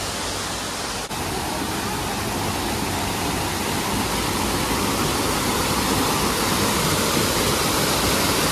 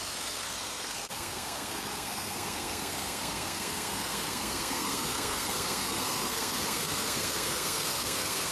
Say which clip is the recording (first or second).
first